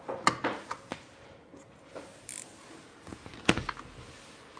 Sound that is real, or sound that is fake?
real